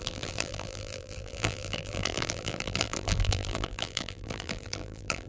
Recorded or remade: remade